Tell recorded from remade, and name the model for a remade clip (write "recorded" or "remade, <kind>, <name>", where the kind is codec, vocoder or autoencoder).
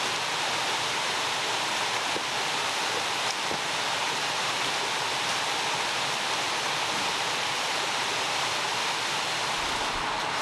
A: recorded